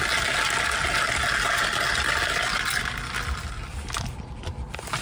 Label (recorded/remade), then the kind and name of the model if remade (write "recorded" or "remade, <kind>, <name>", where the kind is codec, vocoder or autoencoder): recorded